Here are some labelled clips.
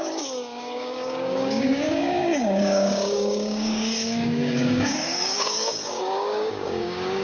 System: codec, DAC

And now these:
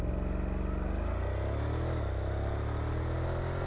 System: none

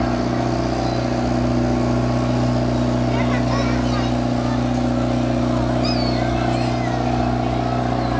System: none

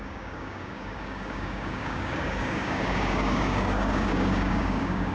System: codec, DAC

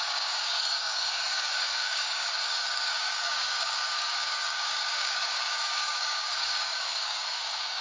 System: codec, DAC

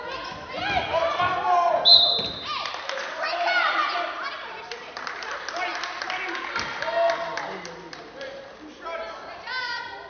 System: none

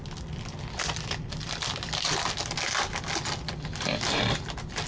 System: none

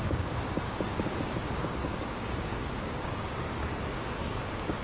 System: codec, DAC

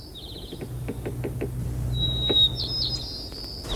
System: none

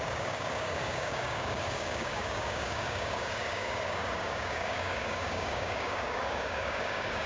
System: codec, DAC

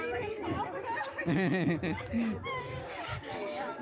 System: codec, DAC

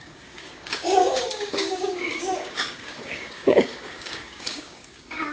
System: codec, DAC